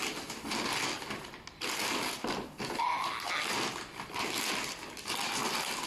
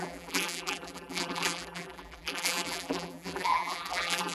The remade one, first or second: second